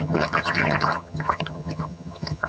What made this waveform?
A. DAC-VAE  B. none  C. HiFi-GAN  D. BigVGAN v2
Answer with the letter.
C